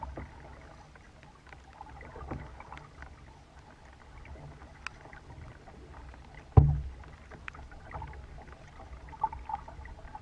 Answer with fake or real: real